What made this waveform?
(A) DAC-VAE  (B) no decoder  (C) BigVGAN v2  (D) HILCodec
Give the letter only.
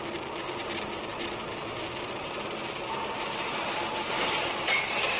B